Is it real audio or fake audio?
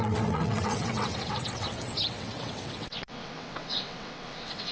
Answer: fake